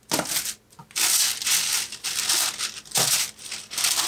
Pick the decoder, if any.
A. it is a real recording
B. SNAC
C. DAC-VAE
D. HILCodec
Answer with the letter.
A